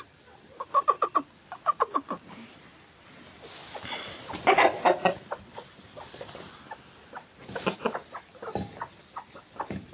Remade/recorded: recorded